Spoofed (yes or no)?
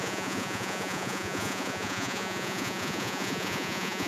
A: yes